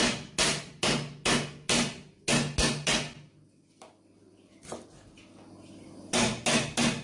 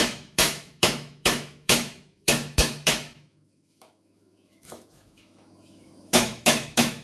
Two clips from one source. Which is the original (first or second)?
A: first